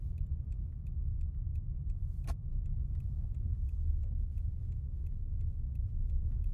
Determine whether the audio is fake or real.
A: real